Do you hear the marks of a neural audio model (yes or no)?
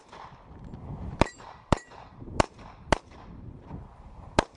yes